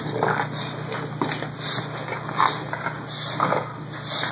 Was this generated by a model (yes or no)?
no